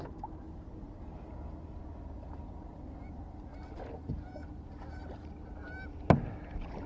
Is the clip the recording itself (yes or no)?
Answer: yes